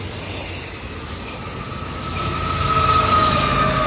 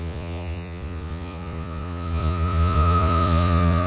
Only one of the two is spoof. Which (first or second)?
second